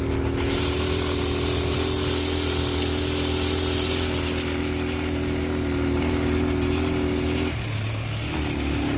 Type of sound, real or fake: real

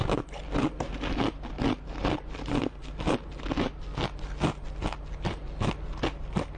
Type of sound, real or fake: real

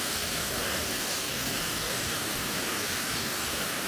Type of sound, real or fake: fake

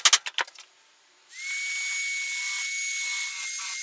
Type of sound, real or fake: real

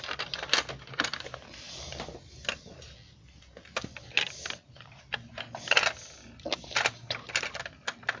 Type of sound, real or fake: real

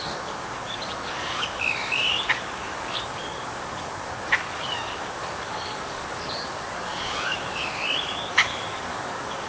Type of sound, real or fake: fake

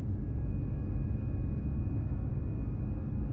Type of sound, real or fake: fake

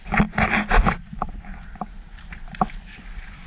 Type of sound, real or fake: real